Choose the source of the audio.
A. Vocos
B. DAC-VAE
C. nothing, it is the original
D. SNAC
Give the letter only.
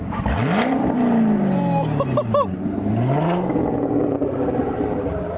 C